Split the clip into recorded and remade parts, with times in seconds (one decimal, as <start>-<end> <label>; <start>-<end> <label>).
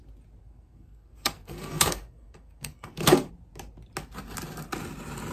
0.0-0.4 recorded; 0.4-3.3 remade; 3.3-5.3 recorded